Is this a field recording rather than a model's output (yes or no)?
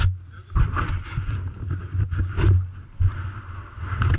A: yes